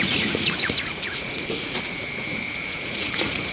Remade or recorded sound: remade